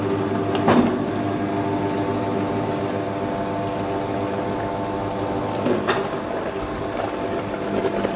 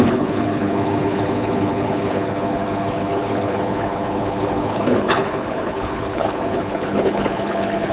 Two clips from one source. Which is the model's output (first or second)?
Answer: second